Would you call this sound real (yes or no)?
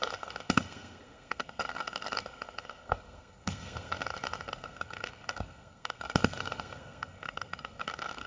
no